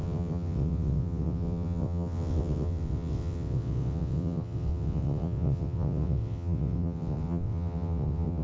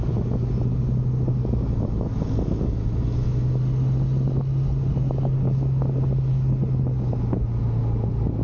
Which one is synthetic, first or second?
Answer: first